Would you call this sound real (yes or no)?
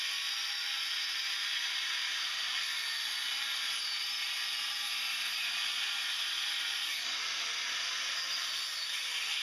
yes